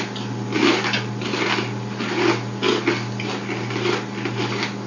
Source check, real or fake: real